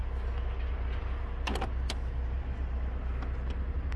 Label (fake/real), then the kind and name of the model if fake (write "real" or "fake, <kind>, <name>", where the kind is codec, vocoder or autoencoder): real